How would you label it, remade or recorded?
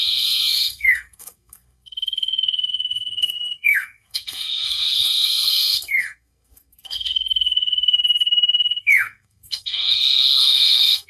remade